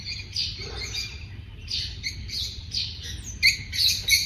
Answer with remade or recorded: recorded